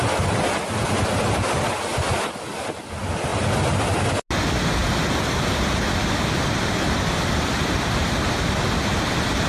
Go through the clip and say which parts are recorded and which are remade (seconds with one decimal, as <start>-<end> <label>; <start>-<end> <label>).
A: 0.0-1.9 recorded; 1.9-2.9 remade; 2.9-4.8 recorded; 4.8-7.6 remade; 7.6-9.5 recorded